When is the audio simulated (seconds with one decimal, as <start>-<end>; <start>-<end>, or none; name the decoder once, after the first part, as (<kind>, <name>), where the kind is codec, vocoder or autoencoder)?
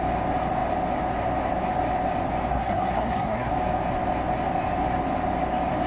2.5-3.5 (codec, SNAC)